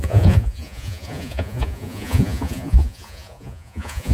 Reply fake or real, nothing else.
fake